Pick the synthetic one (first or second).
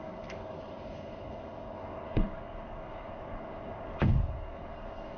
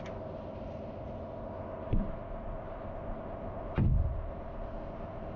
first